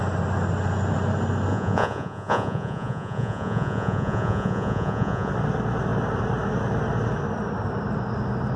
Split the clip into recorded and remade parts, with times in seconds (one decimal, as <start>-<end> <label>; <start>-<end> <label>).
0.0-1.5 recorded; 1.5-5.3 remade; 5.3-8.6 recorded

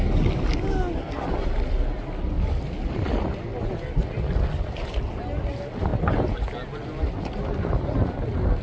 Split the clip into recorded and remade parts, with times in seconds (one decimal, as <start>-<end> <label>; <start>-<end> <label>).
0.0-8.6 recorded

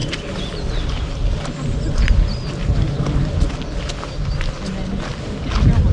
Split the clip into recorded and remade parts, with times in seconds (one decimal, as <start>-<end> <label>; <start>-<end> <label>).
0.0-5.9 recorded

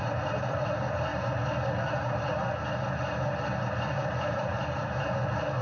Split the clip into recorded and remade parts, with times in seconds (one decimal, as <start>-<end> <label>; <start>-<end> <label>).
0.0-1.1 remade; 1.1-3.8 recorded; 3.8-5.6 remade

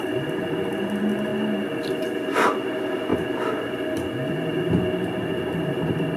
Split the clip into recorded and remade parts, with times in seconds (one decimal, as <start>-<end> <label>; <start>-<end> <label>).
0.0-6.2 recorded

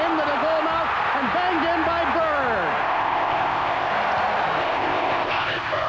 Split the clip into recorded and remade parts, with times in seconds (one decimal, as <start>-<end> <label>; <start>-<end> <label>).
0.0-2.8 recorded; 2.8-3.9 remade; 3.9-4.6 recorded; 4.6-5.9 remade

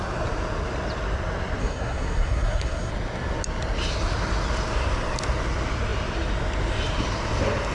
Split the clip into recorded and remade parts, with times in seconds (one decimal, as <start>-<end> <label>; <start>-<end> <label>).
0.0-1.6 recorded; 1.6-2.9 remade; 2.9-7.7 recorded